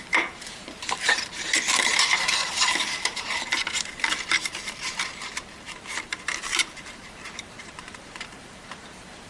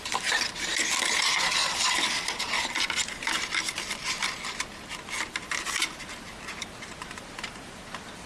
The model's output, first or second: first